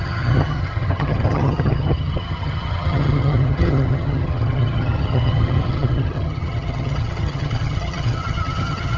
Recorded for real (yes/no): no